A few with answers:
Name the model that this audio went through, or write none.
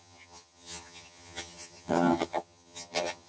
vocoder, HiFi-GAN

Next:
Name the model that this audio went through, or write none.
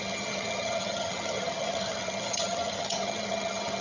vocoder, HiFi-GAN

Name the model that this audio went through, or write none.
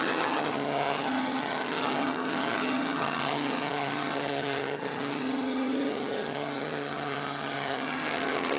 vocoder, HiFi-GAN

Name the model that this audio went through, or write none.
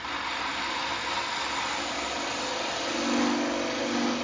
none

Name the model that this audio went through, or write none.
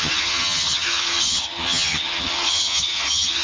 vocoder, HiFi-GAN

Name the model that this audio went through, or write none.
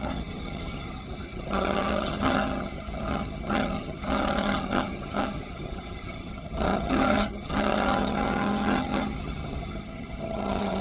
vocoder, HiFi-GAN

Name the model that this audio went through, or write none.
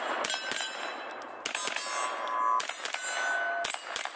none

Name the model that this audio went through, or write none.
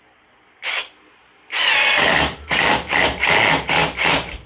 none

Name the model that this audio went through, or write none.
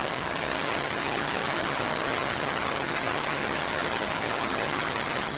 vocoder, HiFi-GAN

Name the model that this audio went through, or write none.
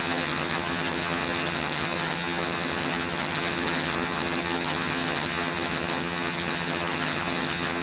vocoder, HiFi-GAN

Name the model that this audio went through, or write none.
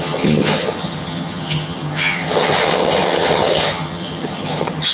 vocoder, HiFi-GAN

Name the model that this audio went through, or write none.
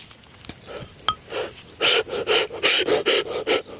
none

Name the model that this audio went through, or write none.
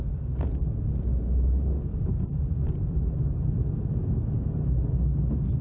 none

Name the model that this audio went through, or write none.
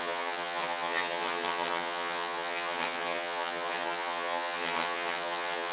vocoder, HiFi-GAN